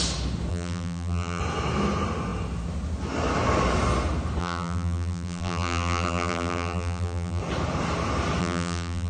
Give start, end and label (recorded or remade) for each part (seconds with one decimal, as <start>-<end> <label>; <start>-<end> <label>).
0.0-0.5 recorded; 0.5-1.4 remade; 1.4-4.4 recorded; 4.4-7.4 remade; 7.4-8.4 recorded; 8.4-9.1 remade